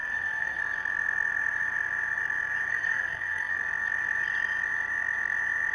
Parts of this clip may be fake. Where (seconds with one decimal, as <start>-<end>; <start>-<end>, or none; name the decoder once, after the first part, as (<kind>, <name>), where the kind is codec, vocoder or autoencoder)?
0.0-0.6 (codec, SNAC); 2.7-3.6